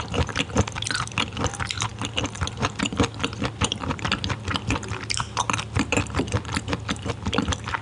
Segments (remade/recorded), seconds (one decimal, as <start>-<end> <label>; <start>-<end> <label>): 0.0-7.8 remade